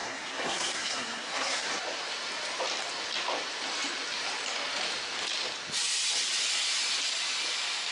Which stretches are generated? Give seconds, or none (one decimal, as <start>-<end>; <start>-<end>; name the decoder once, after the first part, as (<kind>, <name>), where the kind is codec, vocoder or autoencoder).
0.0-1.7 (codec, SNAC)